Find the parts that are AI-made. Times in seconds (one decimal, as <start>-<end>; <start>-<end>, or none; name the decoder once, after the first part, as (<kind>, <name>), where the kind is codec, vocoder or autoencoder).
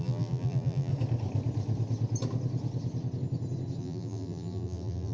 0.0-0.9 (vocoder, BigVGAN v2); 3.8-5.1